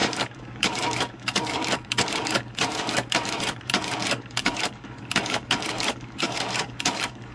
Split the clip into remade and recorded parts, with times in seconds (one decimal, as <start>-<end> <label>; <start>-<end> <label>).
0.0-7.3 remade